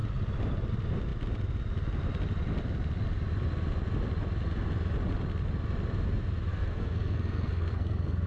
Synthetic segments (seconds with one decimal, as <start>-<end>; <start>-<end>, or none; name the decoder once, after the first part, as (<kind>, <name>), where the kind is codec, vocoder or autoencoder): 6.5-8.3 (codec, SNAC)